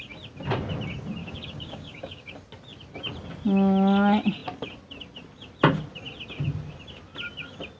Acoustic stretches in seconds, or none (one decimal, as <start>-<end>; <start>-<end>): 0.0-1.2; 2.3-7.8